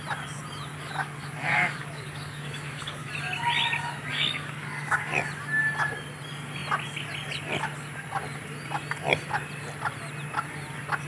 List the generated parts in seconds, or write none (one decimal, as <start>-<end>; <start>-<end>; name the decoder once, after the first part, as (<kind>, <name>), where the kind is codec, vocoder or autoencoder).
0.7-3.1 (codec, DAC); 4.1-5.1